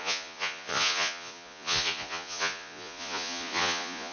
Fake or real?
fake